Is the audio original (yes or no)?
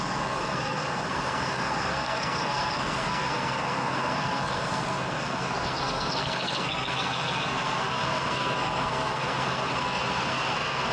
no